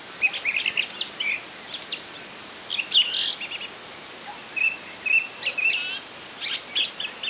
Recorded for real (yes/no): yes